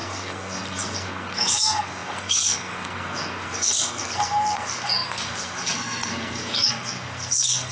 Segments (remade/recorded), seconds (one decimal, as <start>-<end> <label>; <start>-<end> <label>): 0.0-7.7 remade